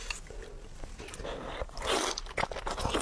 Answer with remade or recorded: recorded